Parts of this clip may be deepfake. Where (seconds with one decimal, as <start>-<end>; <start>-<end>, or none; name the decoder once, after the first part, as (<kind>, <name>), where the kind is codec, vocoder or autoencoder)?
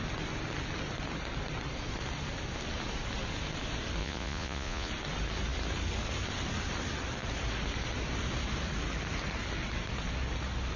4.0-4.9 (vocoder, Vocos)